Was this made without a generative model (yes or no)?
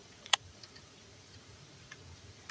no